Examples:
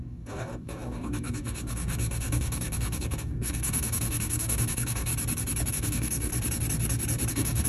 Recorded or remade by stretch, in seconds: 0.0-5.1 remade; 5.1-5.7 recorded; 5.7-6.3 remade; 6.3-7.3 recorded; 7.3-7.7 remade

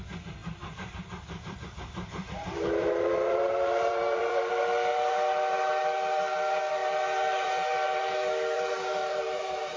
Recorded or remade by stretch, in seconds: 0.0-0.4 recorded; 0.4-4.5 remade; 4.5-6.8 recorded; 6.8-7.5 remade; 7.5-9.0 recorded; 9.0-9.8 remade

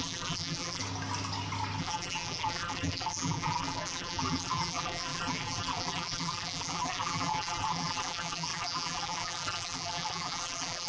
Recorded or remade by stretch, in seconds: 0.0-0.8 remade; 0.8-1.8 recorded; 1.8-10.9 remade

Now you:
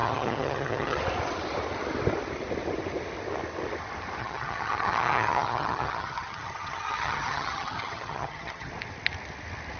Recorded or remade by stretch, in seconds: 0.0-1.0 remade; 1.0-4.2 recorded; 4.2-8.7 remade; 8.7-9.8 recorded

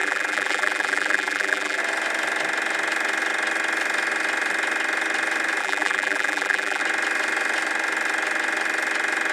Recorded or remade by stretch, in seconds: 0.0-1.8 remade; 1.8-5.6 recorded; 5.6-6.8 remade; 6.8-9.3 recorded

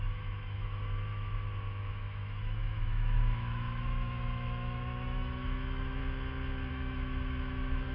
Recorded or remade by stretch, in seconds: 0.0-6.0 remade; 6.0-6.7 recorded; 6.7-7.9 remade

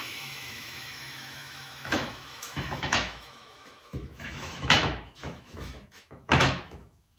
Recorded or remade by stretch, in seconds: 0.0-7.2 remade